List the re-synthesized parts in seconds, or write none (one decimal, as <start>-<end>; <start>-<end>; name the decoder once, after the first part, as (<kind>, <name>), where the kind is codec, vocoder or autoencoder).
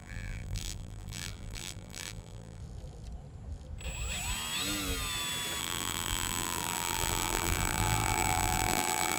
0.0-2.6 (vocoder, BigVGAN v2); 5.6-9.2